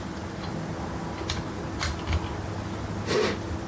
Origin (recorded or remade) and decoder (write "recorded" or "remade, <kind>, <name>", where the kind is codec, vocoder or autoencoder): recorded